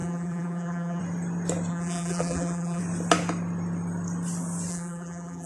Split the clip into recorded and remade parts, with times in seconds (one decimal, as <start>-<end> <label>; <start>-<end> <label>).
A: 0.0-1.0 remade; 1.0-1.7 recorded; 1.7-2.8 remade; 2.8-4.7 recorded; 4.7-5.5 remade